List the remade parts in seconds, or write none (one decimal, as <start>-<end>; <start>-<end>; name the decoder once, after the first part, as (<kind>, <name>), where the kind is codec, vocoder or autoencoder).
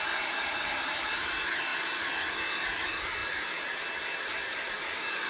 none